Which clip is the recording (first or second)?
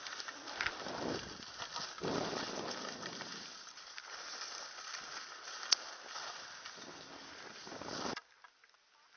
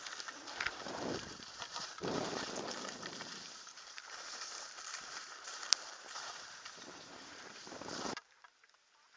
first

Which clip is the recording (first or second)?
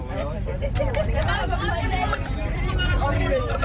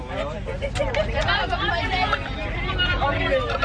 second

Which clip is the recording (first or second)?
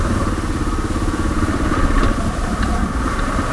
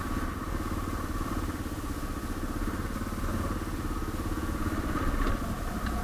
second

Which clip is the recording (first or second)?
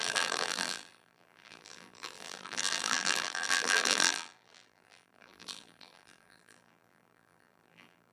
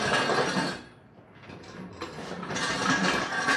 second